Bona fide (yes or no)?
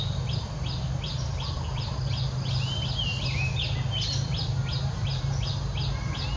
yes